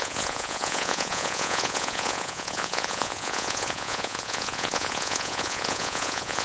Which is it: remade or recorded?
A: remade